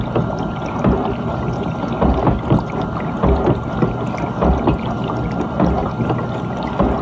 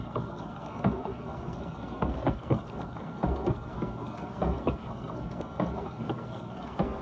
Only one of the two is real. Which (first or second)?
first